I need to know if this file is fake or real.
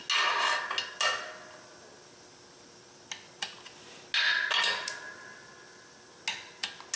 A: real